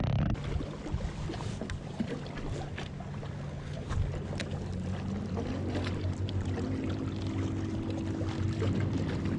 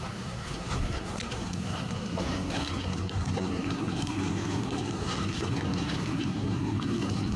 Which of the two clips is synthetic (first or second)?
second